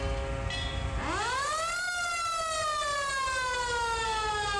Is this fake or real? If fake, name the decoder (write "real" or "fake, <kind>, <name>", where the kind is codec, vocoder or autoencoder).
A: real